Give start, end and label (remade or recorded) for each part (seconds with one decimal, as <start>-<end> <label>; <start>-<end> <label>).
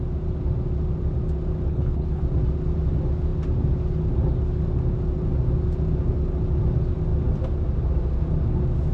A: 0.0-1.7 recorded; 1.7-2.2 remade; 2.2-8.9 recorded